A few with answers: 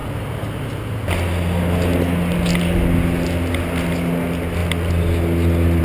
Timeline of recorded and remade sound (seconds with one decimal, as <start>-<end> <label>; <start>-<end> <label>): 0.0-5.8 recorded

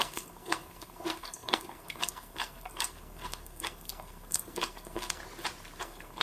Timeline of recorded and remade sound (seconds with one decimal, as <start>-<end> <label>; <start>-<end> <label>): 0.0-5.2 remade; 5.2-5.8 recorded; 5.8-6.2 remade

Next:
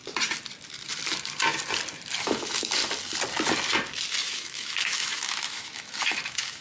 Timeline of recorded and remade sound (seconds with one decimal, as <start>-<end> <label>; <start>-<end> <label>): 0.0-2.2 recorded; 2.2-2.8 remade; 2.8-4.2 recorded; 4.2-6.6 remade